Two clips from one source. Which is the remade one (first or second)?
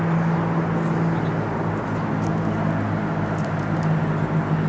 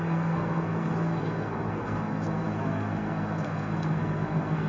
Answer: second